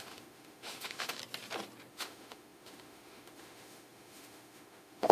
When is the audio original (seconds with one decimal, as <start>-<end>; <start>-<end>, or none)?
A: 1.2-1.9